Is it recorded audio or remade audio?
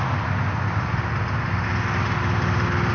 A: recorded